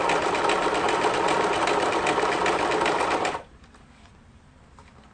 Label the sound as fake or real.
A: real